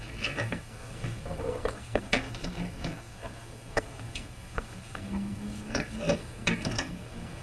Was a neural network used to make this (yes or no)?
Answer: yes